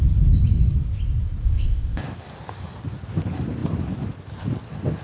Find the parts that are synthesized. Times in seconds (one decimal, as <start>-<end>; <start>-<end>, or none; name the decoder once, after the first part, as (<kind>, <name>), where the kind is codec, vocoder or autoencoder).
1.4-2.0 (codec, ZipCodec)